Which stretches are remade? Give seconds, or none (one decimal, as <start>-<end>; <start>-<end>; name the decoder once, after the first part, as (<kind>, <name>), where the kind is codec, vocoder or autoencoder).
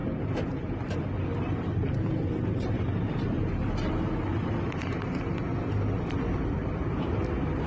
1.4-2.0 (vocoder, BigVGAN v2); 2.5-4.3; 6.0-7.7